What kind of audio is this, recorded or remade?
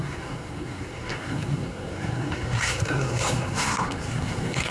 remade